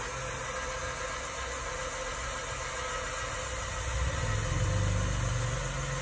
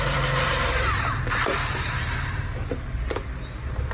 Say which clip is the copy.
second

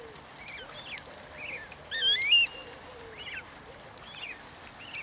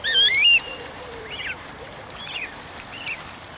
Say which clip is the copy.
second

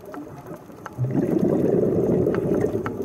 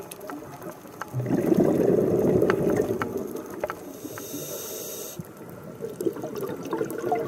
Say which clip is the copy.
first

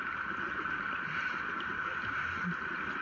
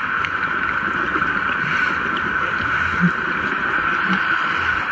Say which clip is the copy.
first